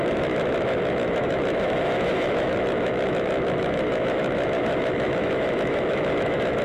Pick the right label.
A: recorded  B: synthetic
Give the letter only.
B